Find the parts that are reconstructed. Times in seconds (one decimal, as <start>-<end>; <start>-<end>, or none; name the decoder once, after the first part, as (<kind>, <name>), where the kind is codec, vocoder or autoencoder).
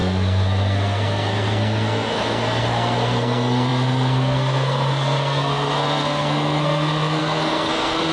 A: 0.0-8.1 (codec, SNAC)